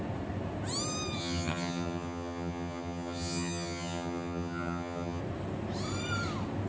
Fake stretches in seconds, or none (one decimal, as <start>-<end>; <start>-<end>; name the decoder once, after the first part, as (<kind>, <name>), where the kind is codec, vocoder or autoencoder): 1.2-5.2 (vocoder, HiFi-GAN)